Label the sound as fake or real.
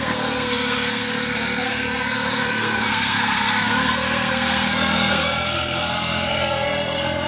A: fake